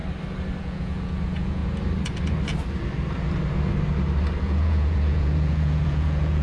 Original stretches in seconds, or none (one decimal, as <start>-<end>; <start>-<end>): 0.0-0.6; 1.6-4.4